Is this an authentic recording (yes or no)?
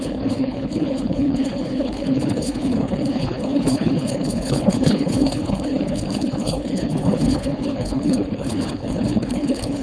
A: no